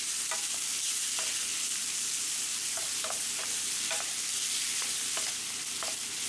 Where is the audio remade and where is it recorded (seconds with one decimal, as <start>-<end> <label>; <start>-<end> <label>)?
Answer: 0.0-1.5 recorded; 1.5-5.3 remade; 5.3-6.3 recorded